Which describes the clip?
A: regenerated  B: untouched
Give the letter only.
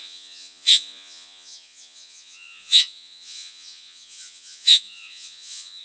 A